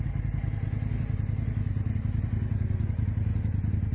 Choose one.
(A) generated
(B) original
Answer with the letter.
B